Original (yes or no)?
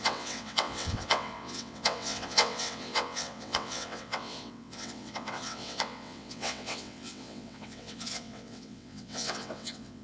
no